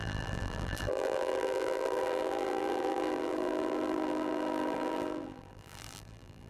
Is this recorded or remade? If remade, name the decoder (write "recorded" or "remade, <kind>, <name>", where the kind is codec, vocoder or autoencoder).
remade, vocoder, BigVGAN v2